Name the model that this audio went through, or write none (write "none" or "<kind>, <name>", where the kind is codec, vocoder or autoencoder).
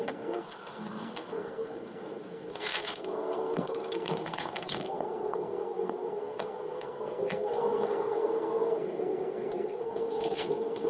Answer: codec, SNAC